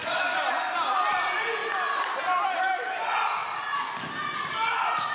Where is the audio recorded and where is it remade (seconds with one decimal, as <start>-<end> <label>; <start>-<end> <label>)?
0.0-5.1 recorded